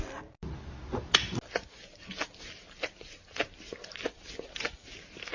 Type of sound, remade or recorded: recorded